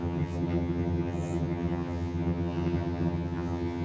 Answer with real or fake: fake